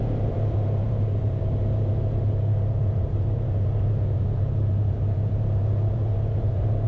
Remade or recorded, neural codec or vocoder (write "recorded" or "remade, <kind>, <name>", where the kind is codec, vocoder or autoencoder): remade, vocoder, BigVGAN v2